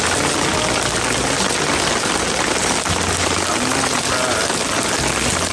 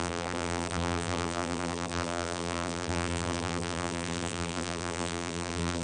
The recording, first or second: first